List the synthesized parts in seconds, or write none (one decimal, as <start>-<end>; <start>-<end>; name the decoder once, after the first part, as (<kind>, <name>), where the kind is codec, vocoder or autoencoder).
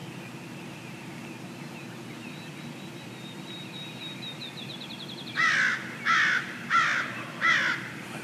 2.2-8.2 (vocoder, BigVGAN v2)